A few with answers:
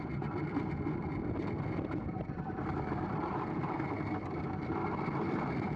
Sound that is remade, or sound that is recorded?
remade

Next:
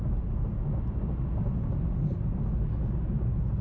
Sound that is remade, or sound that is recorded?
recorded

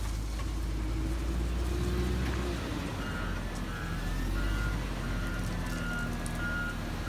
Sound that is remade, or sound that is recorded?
recorded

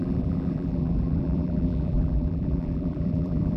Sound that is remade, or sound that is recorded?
remade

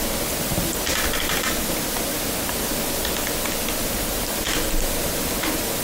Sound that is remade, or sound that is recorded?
recorded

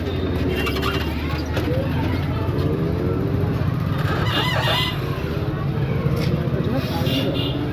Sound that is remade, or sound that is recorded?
recorded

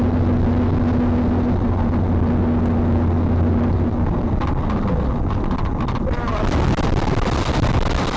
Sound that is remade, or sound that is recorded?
recorded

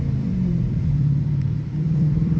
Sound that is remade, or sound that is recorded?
remade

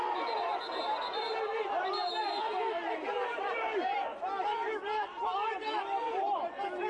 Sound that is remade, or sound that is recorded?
remade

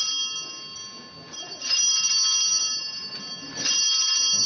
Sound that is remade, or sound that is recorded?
recorded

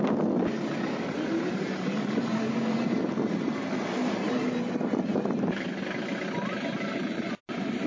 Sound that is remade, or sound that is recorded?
recorded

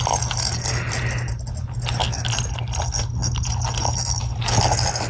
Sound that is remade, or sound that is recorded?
recorded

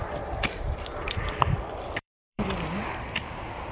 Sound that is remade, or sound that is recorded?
remade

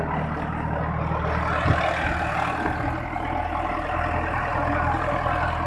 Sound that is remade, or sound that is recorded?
recorded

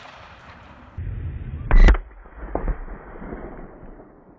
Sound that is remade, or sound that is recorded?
remade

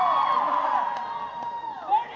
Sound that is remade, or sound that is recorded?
recorded